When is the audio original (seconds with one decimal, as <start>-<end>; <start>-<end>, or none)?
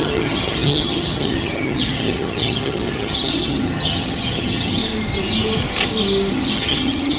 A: 4.8-6.3